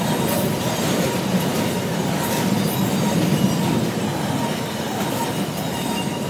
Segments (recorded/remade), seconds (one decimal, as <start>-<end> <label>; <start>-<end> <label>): 0.0-6.3 recorded